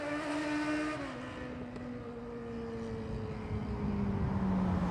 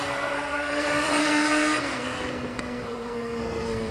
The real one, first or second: first